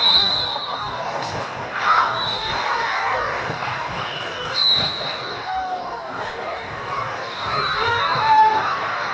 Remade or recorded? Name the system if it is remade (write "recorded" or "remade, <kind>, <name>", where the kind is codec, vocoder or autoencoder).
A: remade, codec, DAC